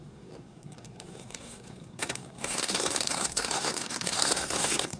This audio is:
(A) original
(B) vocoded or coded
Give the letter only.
B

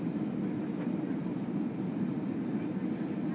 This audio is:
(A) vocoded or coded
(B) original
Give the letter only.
B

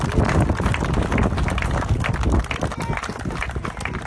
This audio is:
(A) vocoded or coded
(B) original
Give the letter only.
B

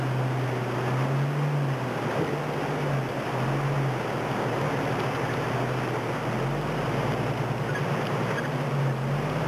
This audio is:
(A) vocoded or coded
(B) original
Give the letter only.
B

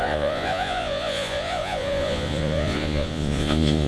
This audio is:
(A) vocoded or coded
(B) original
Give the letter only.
A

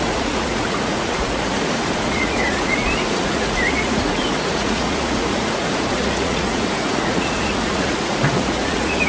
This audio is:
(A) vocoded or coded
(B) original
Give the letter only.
A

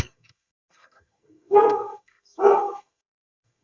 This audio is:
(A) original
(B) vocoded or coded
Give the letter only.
B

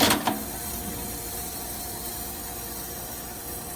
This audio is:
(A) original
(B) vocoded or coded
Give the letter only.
A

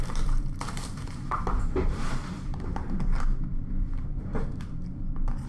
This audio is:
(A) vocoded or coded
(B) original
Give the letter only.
A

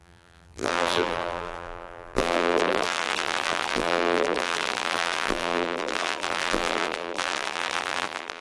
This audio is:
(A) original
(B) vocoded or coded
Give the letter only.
B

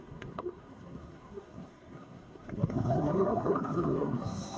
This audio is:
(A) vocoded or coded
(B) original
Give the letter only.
A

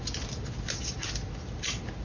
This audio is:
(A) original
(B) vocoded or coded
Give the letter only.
A